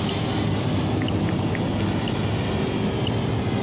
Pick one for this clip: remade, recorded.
recorded